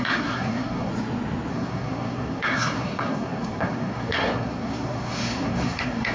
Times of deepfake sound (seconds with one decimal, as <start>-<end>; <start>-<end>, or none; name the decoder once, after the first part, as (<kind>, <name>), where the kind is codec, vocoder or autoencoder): 0.0-0.9 (codec, SNAC); 1.5-6.1